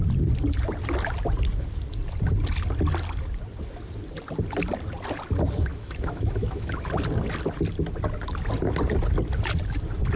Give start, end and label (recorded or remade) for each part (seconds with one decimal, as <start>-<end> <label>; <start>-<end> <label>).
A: 0.0-5.7 recorded; 5.7-6.9 remade; 6.9-10.2 recorded